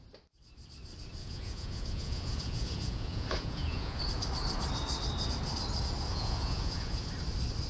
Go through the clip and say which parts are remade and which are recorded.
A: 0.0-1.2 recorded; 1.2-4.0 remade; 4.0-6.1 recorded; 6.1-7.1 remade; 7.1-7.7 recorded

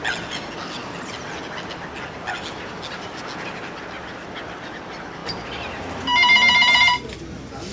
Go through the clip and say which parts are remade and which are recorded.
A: 0.0-7.7 recorded

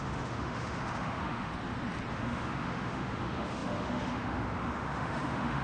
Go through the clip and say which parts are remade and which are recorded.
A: 0.0-1.5 remade; 1.5-2.1 recorded; 2.1-5.6 remade

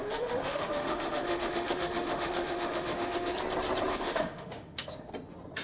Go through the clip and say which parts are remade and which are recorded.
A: 0.0-3.4 remade; 3.4-3.9 recorded; 3.9-5.1 remade; 5.1-5.6 recorded

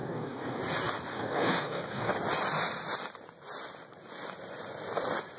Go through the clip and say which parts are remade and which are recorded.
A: 0.0-0.6 remade; 0.6-1.1 recorded; 1.1-2.1 remade; 2.1-5.4 recorded

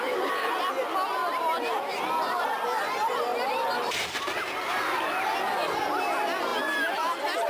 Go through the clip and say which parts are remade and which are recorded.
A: 0.0-3.3 recorded; 3.3-5.0 remade; 5.0-7.5 recorded